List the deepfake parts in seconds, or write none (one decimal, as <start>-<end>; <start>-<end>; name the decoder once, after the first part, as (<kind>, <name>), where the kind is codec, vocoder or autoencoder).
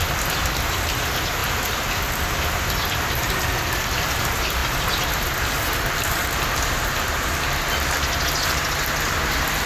none